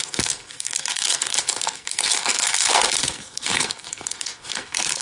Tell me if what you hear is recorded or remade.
remade